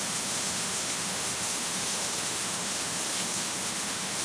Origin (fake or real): fake